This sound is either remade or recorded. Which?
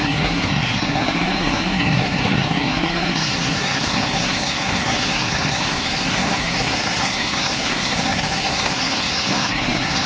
remade